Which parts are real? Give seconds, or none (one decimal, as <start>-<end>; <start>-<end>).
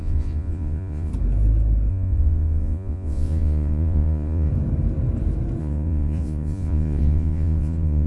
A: 1.1-1.9; 4.5-5.6